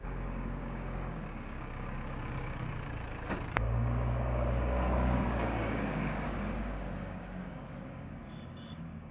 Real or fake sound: fake